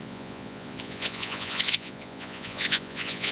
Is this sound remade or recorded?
remade